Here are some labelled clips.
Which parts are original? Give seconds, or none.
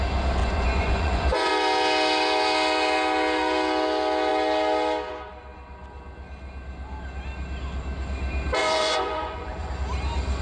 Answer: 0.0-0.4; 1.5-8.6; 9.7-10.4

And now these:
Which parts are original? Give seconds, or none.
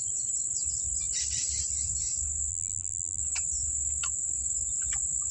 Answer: 0.0-2.5; 3.2-5.3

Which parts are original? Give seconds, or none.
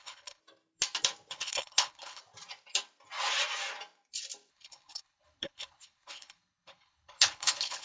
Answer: 0.4-1.3; 2.2-4.5